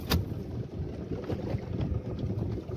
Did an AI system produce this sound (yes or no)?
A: no